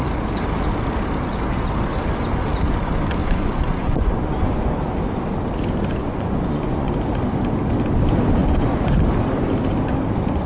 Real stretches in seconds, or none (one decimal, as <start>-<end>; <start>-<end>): 0.0-3.2; 4.9-6.0; 6.9-8.4; 9.0-10.5